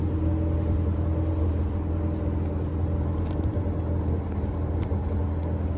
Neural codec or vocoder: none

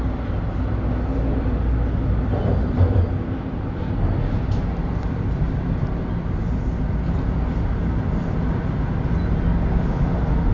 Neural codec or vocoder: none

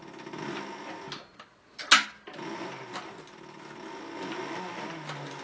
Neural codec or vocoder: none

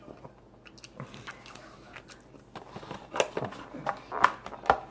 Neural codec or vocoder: none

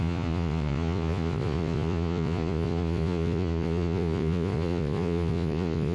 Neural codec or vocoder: vocoder, Vocos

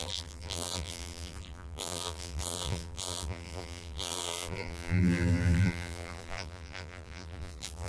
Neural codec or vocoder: vocoder, BigVGAN v2